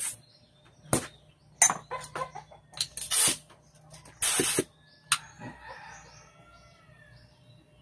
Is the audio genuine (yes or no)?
yes